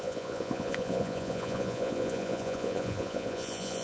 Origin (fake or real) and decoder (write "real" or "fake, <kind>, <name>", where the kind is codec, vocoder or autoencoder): fake, vocoder, Vocos